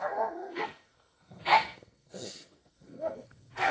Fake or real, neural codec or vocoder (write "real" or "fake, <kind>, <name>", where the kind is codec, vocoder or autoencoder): fake, codec, SNAC